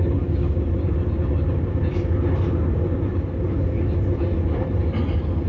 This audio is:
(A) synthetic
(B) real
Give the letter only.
B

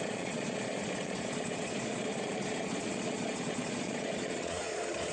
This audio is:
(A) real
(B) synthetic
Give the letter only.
B